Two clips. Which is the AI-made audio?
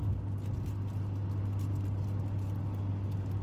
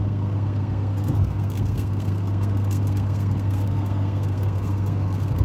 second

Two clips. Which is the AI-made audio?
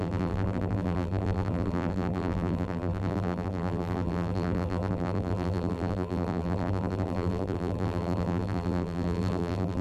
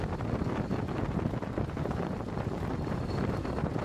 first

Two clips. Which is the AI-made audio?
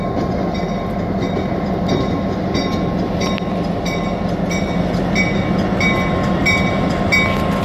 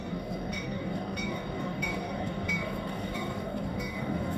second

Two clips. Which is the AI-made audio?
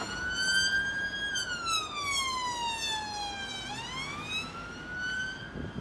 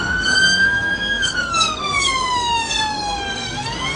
second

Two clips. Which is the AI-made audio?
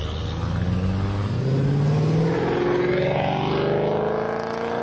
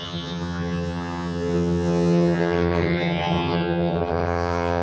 second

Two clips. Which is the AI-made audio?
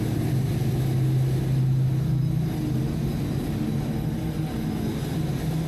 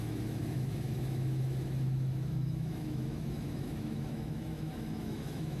second